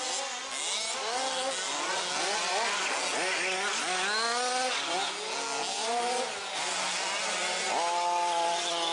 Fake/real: real